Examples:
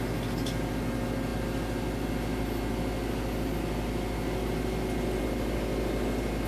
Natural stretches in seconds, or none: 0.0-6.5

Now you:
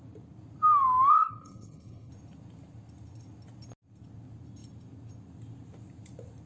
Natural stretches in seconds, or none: 0.0-1.1; 2.1-6.5

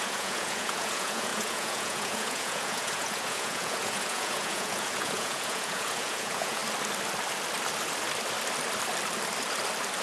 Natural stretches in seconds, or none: 6.6-10.0

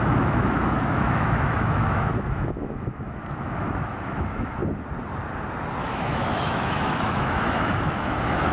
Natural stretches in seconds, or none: 4.6-5.8